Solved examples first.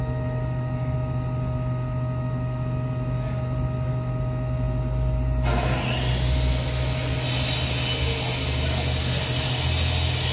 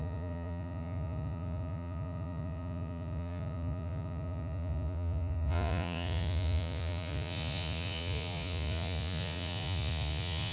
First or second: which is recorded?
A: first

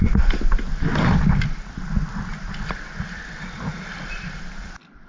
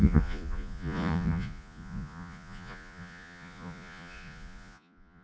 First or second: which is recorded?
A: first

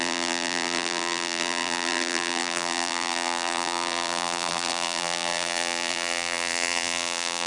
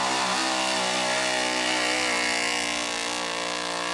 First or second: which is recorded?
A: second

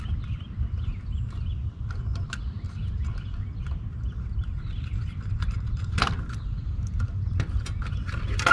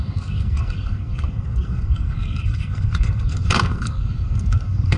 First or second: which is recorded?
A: first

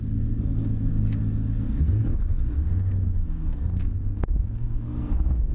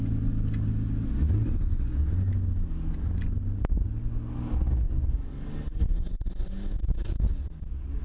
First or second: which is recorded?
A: second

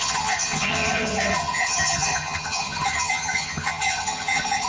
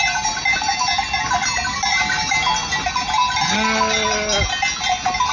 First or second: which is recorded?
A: second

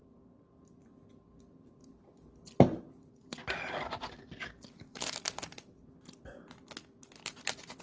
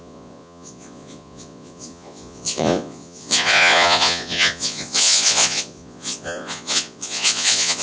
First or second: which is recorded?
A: first